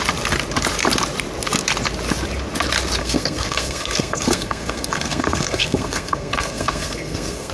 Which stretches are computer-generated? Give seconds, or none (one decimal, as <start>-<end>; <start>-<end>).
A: 3.0-7.5